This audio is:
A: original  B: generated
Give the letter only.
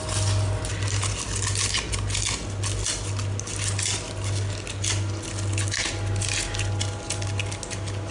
A